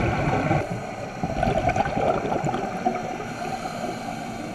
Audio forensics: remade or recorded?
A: remade